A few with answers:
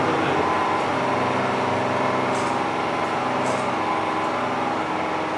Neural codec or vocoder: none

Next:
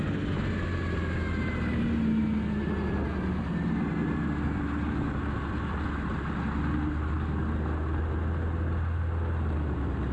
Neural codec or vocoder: none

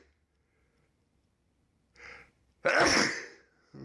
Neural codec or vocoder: vocoder, BigVGAN v2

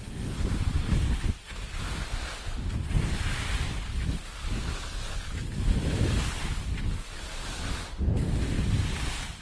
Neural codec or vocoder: none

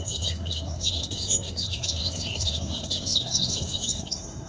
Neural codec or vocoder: codec, SNAC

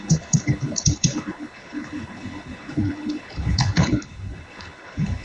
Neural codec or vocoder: codec, HILCodec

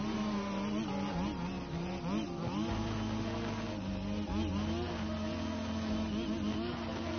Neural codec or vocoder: none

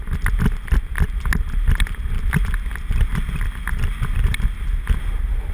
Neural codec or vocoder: none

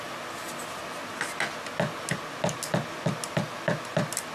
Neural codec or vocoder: none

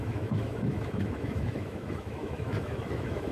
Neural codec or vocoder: autoencoder, DAC-VAE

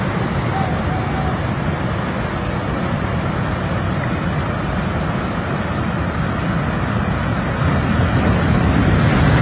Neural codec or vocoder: none